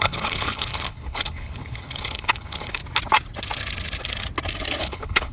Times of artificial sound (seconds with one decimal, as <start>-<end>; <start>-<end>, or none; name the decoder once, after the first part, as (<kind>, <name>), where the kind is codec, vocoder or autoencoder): 0.0-2.8 (codec, HILCodec); 4.8-5.3